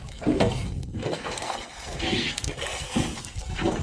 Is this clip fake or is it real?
fake